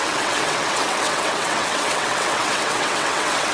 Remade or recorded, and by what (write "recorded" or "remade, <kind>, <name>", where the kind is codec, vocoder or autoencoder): remade, vocoder, WaveNeXt